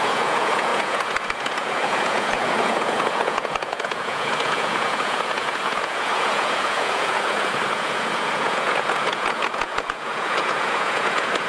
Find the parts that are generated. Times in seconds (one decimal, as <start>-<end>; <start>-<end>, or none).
0.0-11.5